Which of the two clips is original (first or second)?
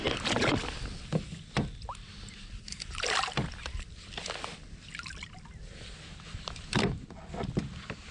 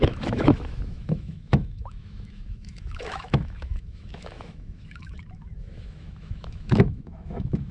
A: first